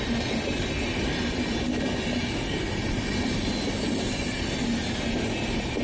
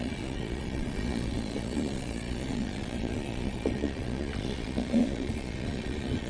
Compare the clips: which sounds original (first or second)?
first